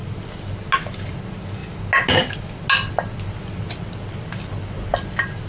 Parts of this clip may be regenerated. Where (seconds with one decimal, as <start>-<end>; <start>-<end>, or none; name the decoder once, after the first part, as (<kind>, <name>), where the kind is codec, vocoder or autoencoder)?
none